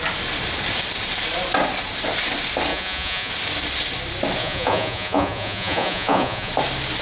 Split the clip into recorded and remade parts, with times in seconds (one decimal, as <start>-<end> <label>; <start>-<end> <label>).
0.0-2.7 recorded; 2.7-3.3 remade; 3.3-4.4 recorded; 4.4-6.5 remade; 6.5-7.0 recorded